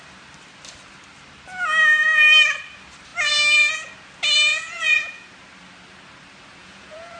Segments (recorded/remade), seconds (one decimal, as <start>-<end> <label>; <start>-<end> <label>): 0.0-4.5 recorded; 4.5-5.3 remade; 5.3-6.6 recorded; 6.6-7.2 remade